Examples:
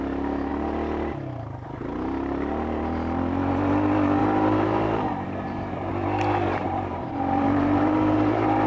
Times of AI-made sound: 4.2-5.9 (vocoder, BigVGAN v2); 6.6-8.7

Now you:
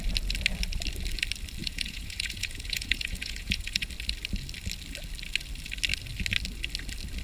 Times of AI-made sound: 1.6-3.9 (vocoder, Vocos)

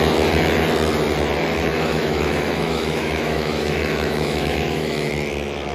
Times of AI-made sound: 1.7-5.1 (autoencoder, DAC-VAE)